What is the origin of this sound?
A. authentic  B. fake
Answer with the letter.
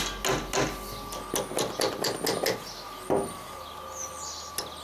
A